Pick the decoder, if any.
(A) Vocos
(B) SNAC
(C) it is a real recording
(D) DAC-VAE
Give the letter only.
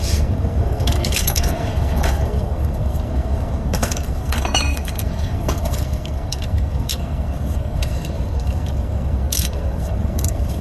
B